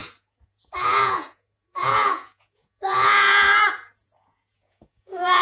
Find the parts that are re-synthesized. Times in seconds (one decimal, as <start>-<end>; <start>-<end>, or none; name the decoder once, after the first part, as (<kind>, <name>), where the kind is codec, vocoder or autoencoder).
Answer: 0.0-5.4 (vocoder, Vocos)